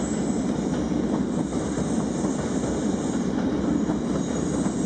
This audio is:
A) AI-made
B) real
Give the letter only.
B